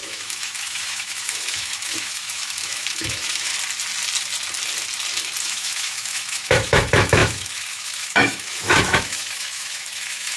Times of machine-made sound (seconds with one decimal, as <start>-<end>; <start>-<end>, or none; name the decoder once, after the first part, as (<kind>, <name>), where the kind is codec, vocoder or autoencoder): 0.0-3.5 (autoencoder, DAC-VAE); 5.4-10.4